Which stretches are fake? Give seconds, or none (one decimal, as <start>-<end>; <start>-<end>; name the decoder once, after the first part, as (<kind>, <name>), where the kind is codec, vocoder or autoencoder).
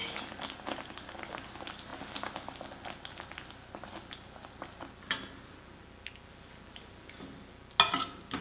none